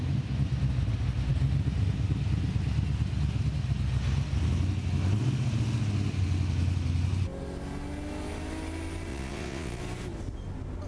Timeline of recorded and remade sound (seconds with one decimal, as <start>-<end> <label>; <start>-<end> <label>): 0.0-9.1 recorded; 9.1-9.8 remade; 9.8-10.9 recorded